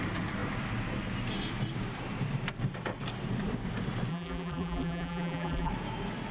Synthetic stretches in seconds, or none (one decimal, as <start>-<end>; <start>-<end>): 4.1-5.7